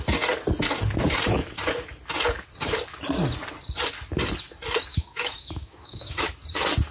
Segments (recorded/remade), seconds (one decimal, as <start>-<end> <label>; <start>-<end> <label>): 0.0-4.9 recorded; 4.9-6.3 remade; 6.3-6.9 recorded